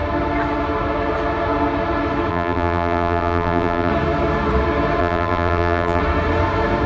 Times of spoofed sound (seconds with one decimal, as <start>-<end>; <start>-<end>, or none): 2.3-3.9; 5.0-6.0